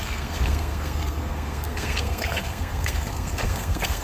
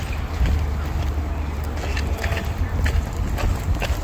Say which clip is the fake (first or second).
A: first